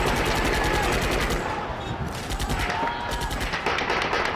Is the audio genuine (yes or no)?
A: yes